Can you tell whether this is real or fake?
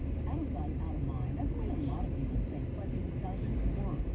real